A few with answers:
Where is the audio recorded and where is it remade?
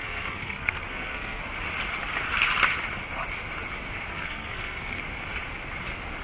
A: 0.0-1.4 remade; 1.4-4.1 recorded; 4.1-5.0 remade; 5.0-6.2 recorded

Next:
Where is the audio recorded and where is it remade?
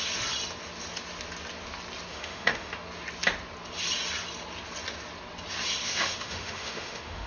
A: 0.0-2.1 recorded; 2.1-2.7 remade; 2.7-5.8 recorded; 5.8-7.3 remade